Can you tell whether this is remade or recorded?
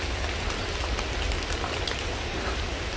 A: recorded